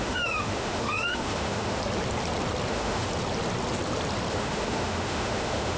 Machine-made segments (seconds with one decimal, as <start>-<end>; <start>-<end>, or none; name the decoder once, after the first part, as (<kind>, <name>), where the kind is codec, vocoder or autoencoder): 0.0-1.8 (autoencoder, DAC-VAE); 2.7-3.1; 4.3-5.8